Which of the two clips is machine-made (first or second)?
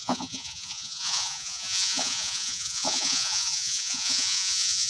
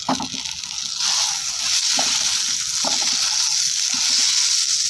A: first